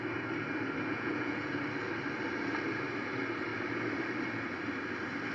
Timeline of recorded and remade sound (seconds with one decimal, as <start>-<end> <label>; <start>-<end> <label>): 0.0-0.9 recorded; 0.9-1.6 remade; 1.6-5.3 recorded